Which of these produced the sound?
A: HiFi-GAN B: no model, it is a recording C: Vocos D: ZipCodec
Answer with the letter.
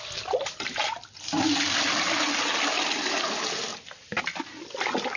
B